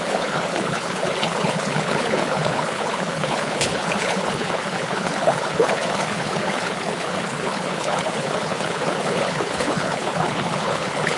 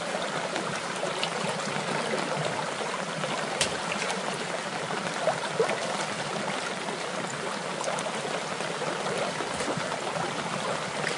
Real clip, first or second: second